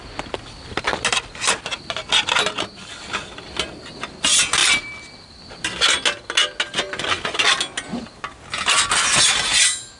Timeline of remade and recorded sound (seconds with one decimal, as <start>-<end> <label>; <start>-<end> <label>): 0.0-10.0 recorded